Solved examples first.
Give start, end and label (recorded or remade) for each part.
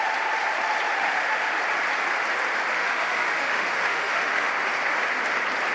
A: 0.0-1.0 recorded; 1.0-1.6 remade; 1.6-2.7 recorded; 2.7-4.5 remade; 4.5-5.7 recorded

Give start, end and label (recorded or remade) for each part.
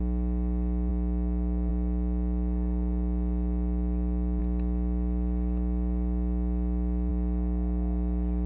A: 0.0-8.5 recorded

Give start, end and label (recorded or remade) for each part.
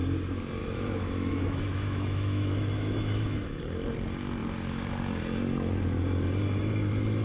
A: 0.0-0.6 recorded; 0.6-3.6 remade; 3.6-7.2 recorded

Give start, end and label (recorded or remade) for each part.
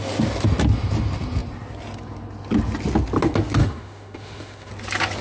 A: 0.0-3.6 recorded; 3.6-4.7 remade; 4.7-5.2 recorded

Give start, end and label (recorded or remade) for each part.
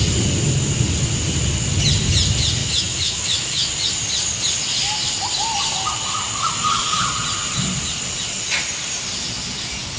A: 0.0-2.6 recorded; 2.6-3.7 remade; 3.7-10.0 recorded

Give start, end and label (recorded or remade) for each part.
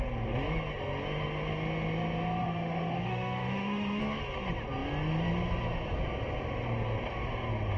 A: 0.0-2.4 recorded; 2.4-4.0 remade; 4.0-7.8 recorded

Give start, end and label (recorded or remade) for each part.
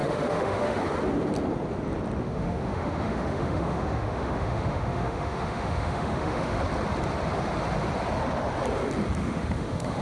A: 0.0-0.8 remade; 0.8-2.2 recorded; 2.2-6.6 remade; 6.6-9.2 recorded; 9.2-10.0 remade